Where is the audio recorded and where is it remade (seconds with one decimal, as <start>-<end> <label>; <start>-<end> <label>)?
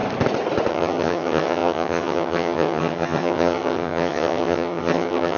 0.0-0.7 recorded; 0.7-5.4 remade